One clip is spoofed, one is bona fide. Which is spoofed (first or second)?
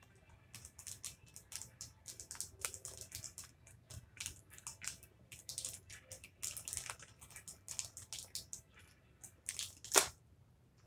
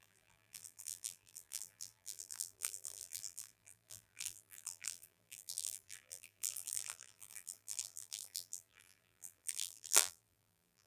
second